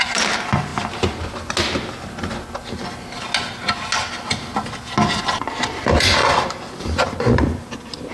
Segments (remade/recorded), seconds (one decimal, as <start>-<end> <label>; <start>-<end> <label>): 0.0-0.7 remade; 0.7-5.4 recorded; 5.4-8.1 remade